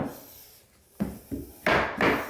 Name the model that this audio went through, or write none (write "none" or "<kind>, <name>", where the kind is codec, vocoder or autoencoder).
none